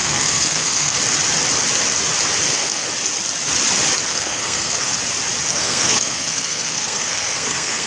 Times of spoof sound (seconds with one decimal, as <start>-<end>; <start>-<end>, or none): 0.0-1.0; 2.4-2.9; 4.1-5.0; 5.5-7.9

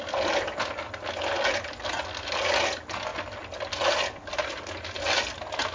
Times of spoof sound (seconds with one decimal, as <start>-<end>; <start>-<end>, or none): none

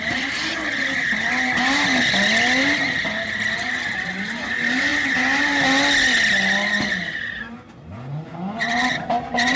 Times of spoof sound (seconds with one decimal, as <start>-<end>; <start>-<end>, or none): none

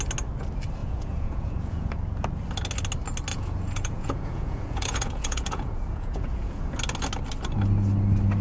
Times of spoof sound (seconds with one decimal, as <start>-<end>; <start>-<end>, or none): 0.8-1.9; 3.3-6.8

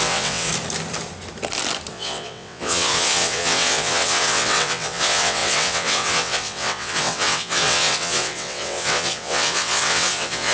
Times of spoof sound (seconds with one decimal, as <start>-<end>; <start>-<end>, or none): 0.0-0.5; 1.9-10.5

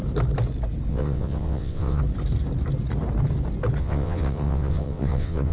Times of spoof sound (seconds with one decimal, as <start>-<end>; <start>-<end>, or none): 0.9-2.0; 3.8-5.5

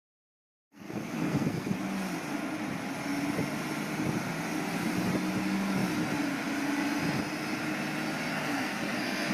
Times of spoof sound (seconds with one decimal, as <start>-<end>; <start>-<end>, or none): 0.7-1.8; 8.3-9.3